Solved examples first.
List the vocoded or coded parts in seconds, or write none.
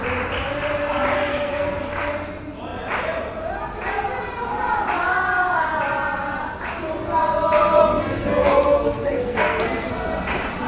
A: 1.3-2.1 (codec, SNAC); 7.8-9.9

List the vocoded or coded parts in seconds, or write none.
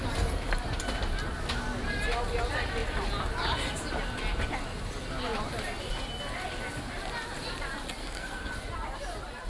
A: 8.0-8.5 (codec, SNAC)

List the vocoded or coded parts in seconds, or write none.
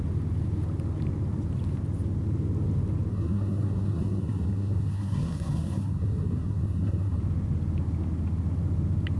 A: 3.1-7.2 (codec, SNAC)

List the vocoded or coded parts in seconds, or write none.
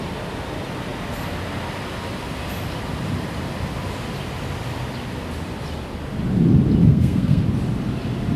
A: 6.8-7.4 (codec, SNAC)